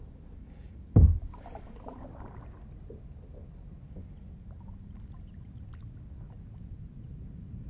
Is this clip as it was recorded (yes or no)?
yes